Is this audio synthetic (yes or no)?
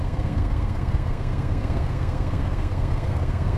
yes